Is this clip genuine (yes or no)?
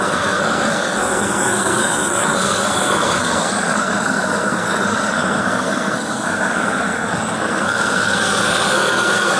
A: no